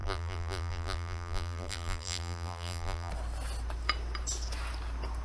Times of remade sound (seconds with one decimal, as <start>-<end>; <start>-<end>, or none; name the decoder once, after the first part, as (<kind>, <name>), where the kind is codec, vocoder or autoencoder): 0.0-3.1 (vocoder, BigVGAN v2)